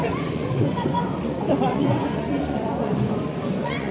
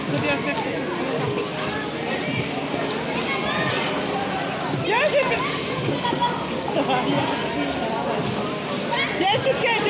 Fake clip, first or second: first